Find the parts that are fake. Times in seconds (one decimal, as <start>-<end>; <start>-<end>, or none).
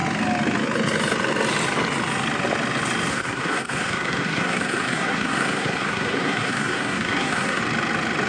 3.1-7.6